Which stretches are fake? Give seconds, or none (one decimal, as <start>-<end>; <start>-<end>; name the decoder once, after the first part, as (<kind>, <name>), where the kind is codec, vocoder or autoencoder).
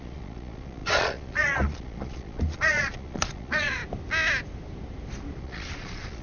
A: 0.0-3.8 (vocoder, Vocos); 5.4-6.2